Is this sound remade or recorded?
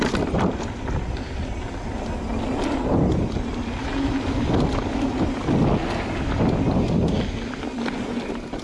recorded